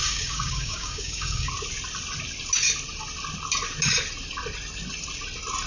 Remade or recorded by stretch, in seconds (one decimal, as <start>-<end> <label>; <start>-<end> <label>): 0.0-1.5 remade; 1.5-5.7 recorded